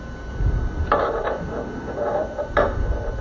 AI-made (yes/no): no